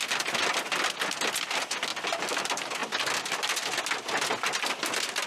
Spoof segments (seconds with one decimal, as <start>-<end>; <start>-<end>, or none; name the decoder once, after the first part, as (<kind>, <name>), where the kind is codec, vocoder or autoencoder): none